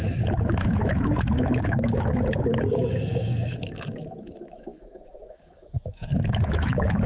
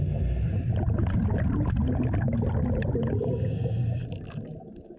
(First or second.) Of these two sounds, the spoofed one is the first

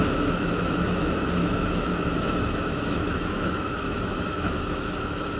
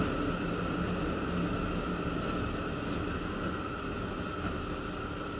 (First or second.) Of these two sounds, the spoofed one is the first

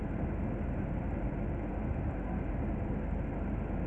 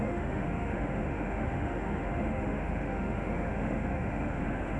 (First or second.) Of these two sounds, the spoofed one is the second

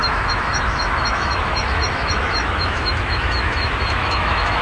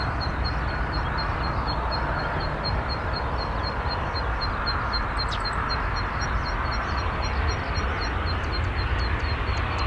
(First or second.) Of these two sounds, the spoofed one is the first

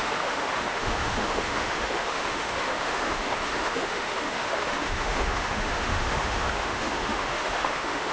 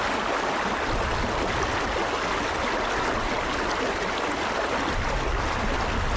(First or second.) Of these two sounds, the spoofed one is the first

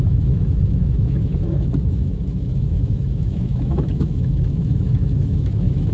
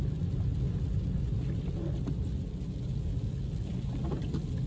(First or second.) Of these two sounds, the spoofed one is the first